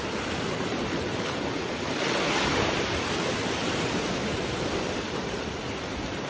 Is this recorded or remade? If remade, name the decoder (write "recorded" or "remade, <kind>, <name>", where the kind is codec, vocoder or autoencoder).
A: remade, vocoder, BigVGAN v2